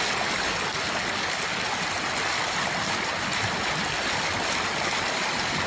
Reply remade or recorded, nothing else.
recorded